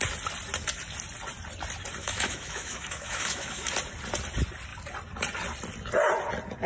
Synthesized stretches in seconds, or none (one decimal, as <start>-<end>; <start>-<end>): 2.0-3.7